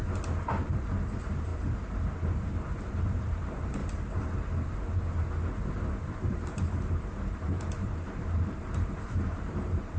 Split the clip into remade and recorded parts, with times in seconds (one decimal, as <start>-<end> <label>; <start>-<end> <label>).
0.0-0.7 recorded; 0.7-1.5 remade; 1.5-2.8 recorded; 2.8-3.8 remade; 3.8-5.9 recorded; 5.9-10.0 remade